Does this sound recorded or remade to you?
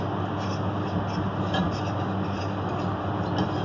recorded